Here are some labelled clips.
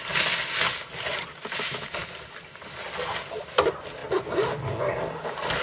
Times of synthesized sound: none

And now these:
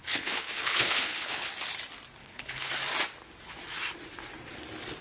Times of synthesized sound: 0.0-1.5; 2.2-2.7

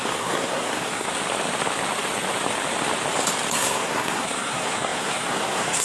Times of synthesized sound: 0.0-1.1; 3.5-5.8

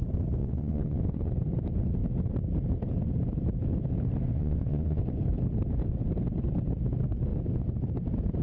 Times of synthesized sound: 0.4-1.3; 4.3-5.0

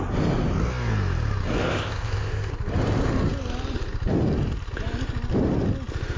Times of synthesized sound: 1.6-2.5

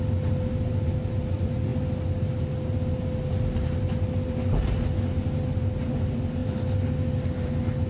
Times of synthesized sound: 0.0-1.7; 5.1-6.4; 7.0-7.9

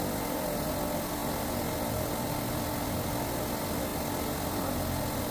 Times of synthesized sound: none

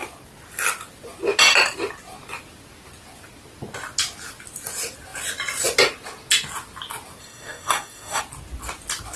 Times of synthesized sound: 7.2-8.2